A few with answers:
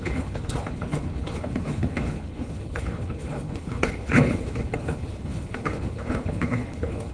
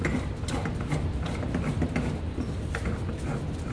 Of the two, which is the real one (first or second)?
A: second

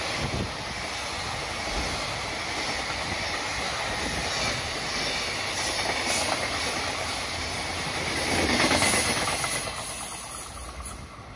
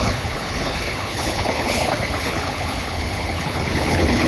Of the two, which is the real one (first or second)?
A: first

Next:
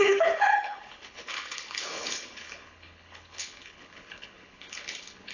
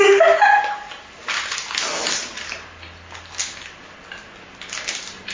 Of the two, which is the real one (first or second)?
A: second